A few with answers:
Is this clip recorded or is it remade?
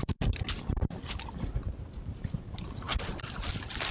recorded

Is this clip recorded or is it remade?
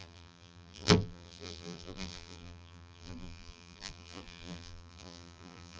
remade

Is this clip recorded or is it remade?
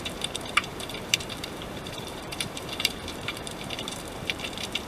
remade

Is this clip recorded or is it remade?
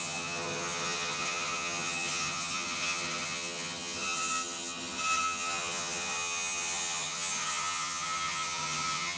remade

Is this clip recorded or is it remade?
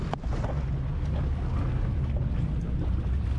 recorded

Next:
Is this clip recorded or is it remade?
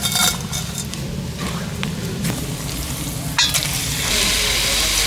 recorded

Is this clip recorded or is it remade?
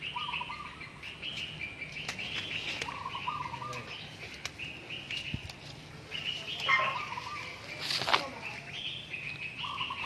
recorded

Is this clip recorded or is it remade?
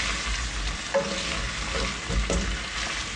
recorded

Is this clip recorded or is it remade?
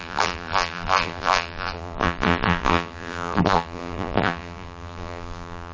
remade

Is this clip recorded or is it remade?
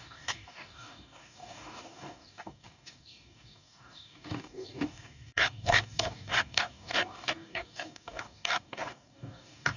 remade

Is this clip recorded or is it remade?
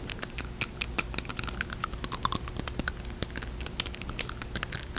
recorded